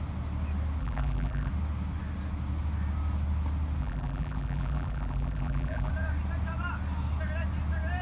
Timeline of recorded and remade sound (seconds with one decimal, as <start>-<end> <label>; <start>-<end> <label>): 0.0-0.8 recorded; 0.8-1.5 remade; 1.5-3.8 recorded; 3.8-5.9 remade; 5.9-8.0 recorded